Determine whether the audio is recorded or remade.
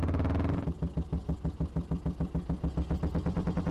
recorded